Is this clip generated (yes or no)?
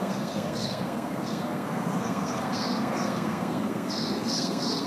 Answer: yes